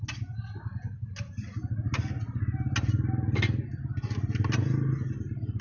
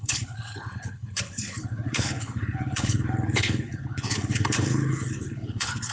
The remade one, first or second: second